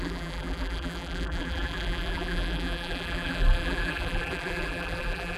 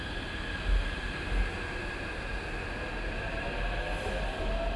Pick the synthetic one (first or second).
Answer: first